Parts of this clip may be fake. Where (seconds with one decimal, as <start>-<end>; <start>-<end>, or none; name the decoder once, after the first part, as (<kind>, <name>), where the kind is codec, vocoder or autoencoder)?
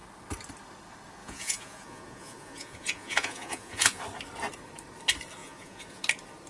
1.2-4.0 (vocoder, Vocos); 5.4-6.0